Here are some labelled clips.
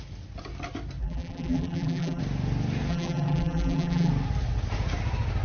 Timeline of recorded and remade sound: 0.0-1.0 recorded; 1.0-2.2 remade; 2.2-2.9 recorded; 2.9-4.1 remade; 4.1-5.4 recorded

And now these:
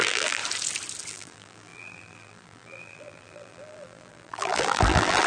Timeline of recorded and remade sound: 0.0-0.4 remade; 0.4-1.1 recorded; 1.1-5.3 remade

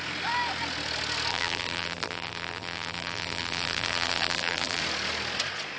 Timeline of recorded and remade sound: 0.0-1.3 recorded; 1.3-4.8 remade; 4.8-5.8 recorded

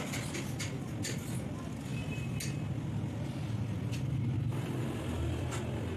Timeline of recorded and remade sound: 0.0-6.0 recorded

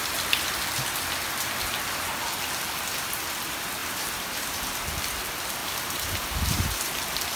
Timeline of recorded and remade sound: 0.0-3.8 recorded; 3.8-4.7 remade; 4.7-5.6 recorded; 5.6-7.4 remade

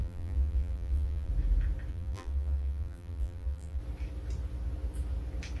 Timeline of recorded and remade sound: 0.0-1.3 remade; 1.3-1.9 recorded; 1.9-3.8 remade; 3.8-5.6 recorded